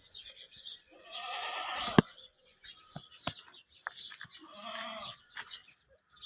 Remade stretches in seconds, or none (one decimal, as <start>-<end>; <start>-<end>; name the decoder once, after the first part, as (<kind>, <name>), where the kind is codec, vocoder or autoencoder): 0.0-3.0 (vocoder, Vocos); 5.0-5.6